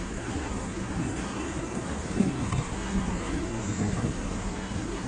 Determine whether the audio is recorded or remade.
remade